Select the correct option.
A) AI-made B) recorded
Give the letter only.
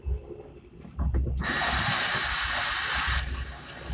B